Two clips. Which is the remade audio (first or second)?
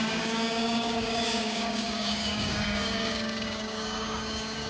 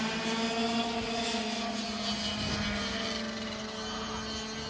first